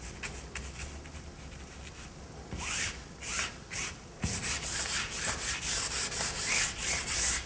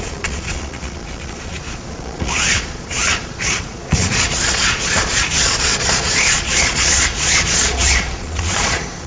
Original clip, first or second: first